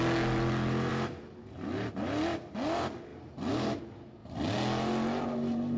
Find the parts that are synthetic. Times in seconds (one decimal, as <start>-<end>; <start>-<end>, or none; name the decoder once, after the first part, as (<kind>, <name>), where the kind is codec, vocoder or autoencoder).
0.9-1.5 (vocoder, BigVGAN v2)